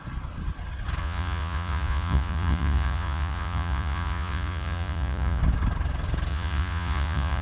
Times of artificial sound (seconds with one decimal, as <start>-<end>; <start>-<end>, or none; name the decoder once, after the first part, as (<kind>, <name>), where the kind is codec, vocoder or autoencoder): 1.0-5.4 (vocoder, Vocos); 6.3-7.4